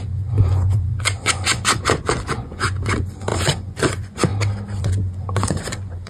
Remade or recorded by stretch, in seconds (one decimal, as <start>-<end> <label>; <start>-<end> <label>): 0.0-4.3 remade; 4.3-4.8 recorded; 4.8-6.1 remade